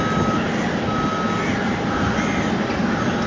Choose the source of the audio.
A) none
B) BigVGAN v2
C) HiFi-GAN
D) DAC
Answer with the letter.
A